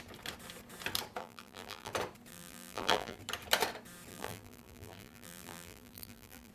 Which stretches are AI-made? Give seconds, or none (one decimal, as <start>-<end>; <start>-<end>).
1.2-1.9; 2.3-3.2; 4.1-6.5